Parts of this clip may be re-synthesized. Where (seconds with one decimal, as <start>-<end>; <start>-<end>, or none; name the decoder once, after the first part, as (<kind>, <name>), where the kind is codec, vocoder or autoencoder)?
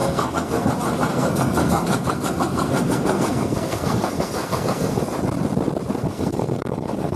0.0-0.7 (codec, SNAC); 1.1-5.0; 6.0-7.2